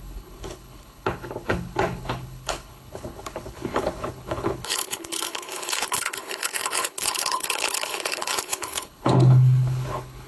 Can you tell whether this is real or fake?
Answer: fake